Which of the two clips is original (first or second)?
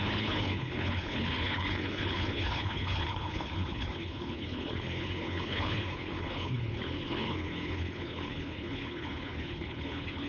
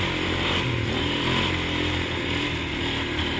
second